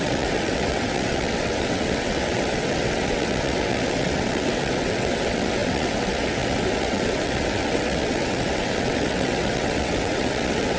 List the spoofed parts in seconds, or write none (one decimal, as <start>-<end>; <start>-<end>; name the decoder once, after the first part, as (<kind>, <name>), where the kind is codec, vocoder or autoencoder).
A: 0.0-10.8 (vocoder, WaveNeXt)

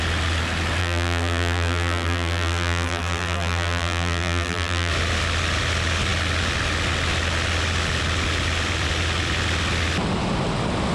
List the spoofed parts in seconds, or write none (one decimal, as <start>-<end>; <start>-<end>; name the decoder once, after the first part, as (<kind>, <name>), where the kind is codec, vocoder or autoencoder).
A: 0.8-4.9 (vocoder, BigVGAN v2)

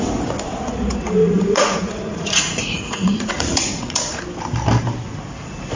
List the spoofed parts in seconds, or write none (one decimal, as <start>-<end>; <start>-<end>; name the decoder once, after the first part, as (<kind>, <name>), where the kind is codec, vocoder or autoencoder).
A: 1.2-4.2 (vocoder, Vocos)

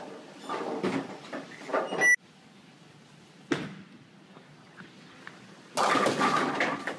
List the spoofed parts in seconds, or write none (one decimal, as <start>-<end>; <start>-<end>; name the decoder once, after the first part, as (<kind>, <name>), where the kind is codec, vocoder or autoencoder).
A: none